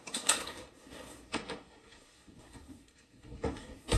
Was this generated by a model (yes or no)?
yes